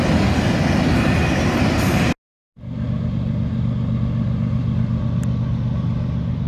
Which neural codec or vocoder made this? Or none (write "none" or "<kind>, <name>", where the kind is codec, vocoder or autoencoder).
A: none